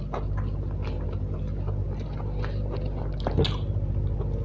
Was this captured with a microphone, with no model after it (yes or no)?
yes